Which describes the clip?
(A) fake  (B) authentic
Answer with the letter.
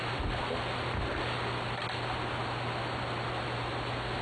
B